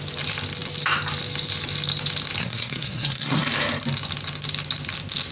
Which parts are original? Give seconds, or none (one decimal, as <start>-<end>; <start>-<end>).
0.0-2.4; 3.4-5.3